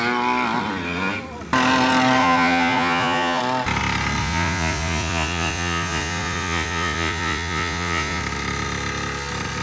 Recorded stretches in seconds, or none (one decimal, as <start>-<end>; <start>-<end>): 0.0-2.2; 3.4-4.2; 8.2-9.6